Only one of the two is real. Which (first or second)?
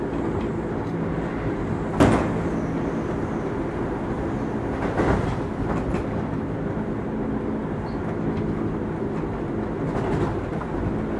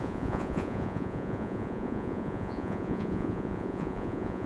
first